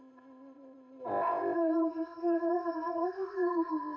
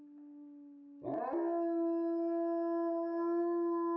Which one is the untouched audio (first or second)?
second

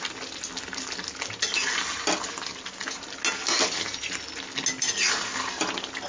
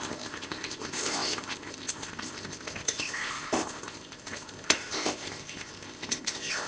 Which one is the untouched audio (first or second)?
first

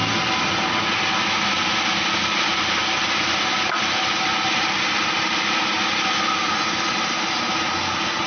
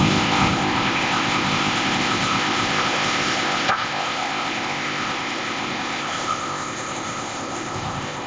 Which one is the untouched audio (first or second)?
first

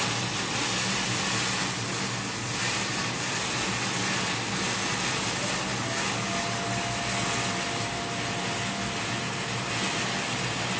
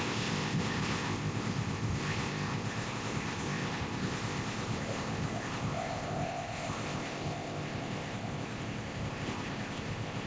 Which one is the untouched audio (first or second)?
first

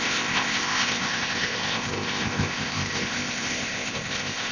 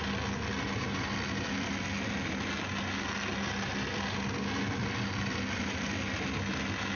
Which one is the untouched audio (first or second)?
second